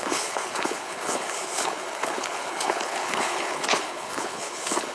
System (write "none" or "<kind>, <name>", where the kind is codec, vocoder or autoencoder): codec, HILCodec